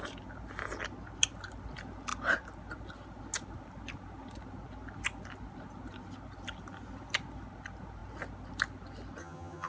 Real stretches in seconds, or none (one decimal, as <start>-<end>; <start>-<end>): 0.0-9.2